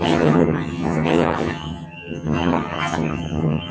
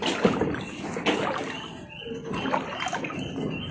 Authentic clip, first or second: second